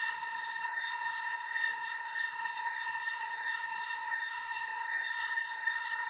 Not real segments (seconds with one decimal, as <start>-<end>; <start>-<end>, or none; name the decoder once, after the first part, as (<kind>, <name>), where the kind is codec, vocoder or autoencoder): 0.0-6.1 (codec, SNAC)